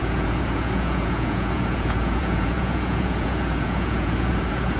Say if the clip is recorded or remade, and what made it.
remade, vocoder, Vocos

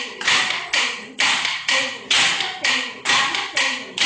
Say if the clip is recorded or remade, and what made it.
recorded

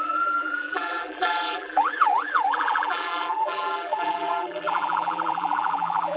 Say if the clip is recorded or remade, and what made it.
remade, vocoder, BigVGAN v2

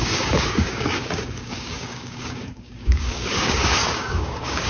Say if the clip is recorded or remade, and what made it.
remade, codec, DAC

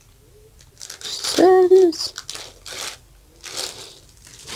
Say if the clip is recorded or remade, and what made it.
recorded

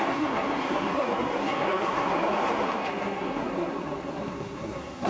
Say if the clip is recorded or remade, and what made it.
remade, codec, SNAC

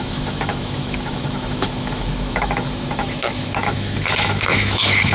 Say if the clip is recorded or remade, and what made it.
remade, autoencoder, DAC-VAE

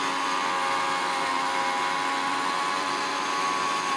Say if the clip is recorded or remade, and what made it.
recorded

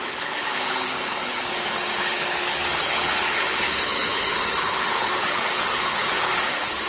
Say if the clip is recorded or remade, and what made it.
remade, codec, HILCodec